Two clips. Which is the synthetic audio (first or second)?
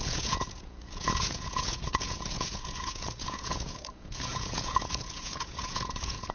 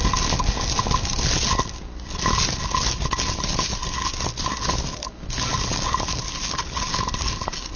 first